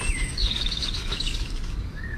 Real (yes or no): no